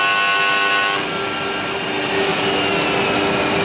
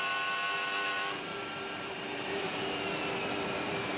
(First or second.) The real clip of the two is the first